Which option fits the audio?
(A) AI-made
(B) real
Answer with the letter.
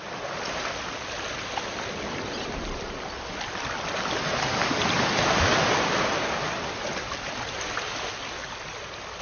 B